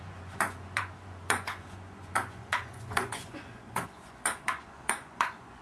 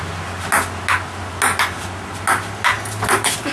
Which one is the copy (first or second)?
first